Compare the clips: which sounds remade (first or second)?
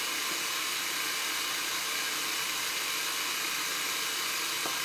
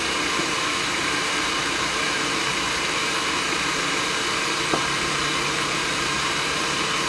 second